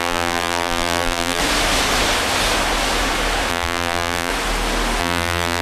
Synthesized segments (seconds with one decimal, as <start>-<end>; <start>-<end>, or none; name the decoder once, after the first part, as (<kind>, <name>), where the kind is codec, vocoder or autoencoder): 0.0-1.4 (vocoder, BigVGAN v2); 3.5-4.3; 5.0-5.6